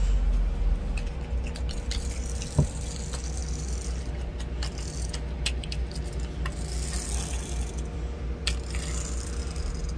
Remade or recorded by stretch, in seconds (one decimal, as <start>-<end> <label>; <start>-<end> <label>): 0.0-10.0 recorded

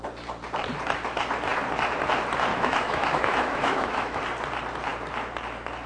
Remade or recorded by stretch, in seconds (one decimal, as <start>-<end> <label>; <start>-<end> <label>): 0.0-2.5 recorded; 2.5-4.2 remade; 4.2-5.9 recorded

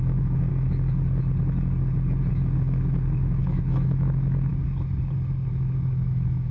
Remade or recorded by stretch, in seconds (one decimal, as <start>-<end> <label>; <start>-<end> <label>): 0.0-0.5 remade; 0.5-2.3 recorded; 2.3-4.5 remade; 4.5-5.5 recorded; 5.5-6.5 remade

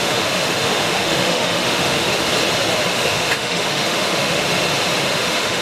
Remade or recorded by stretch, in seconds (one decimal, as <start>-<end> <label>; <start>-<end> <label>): 0.0-2.3 remade; 2.3-2.9 recorded; 2.9-4.4 remade; 4.4-5.0 recorded; 5.0-5.6 remade

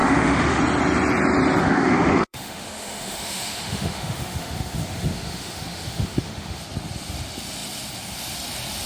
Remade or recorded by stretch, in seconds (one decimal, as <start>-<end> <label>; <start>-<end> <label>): 0.0-0.6 remade; 0.6-1.6 recorded; 1.6-6.6 remade; 6.6-8.9 recorded

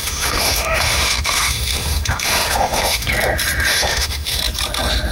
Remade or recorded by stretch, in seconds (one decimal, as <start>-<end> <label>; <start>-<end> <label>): 0.0-3.1 remade; 3.1-3.7 recorded; 3.7-4.4 remade; 4.4-5.1 recorded

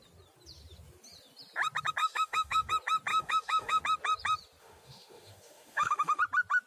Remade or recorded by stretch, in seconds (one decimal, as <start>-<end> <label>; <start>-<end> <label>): 0.0-2.0 recorded; 2.0-2.7 remade; 2.7-3.1 recorded; 3.1-3.8 remade; 3.8-4.6 recorded; 4.6-6.2 remade; 6.2-6.7 recorded